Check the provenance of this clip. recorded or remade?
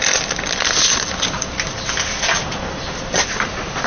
recorded